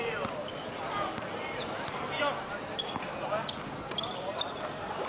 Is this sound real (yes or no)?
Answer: yes